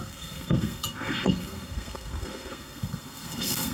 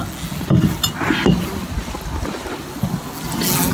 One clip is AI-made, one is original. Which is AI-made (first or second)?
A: first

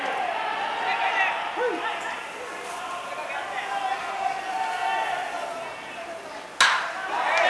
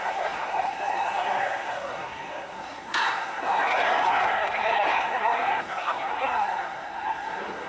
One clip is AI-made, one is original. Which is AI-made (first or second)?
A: second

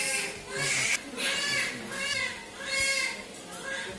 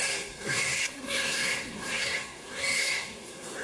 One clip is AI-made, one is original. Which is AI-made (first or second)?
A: second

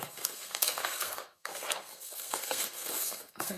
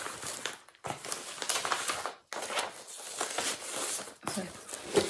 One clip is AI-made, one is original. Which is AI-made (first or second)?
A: first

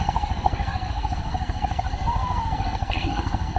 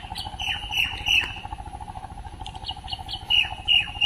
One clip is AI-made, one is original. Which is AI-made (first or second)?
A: first